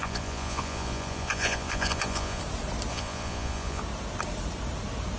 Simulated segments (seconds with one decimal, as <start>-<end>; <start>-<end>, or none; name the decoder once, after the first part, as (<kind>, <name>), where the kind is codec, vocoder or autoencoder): 0.0-2.4 (vocoder, Vocos); 2.9-3.8